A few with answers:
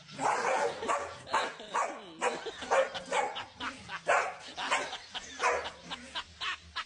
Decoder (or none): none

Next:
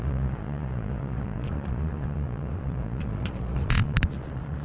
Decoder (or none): vocoder, Vocos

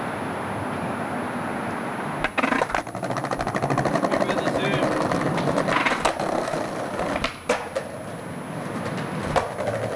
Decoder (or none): none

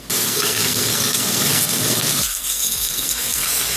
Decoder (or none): codec, SNAC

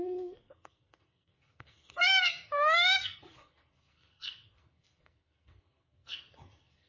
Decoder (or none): codec, SNAC